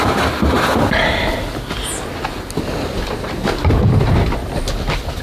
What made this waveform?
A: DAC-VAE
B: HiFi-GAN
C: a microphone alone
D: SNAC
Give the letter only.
C